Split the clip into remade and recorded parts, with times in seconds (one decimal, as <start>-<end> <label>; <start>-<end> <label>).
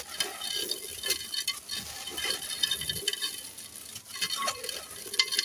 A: 0.0-5.4 recorded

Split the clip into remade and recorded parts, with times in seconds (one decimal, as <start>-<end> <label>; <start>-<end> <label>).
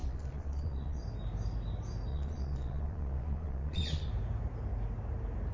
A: 0.0-1.0 remade; 1.0-2.1 recorded; 2.1-4.1 remade; 4.1-5.5 recorded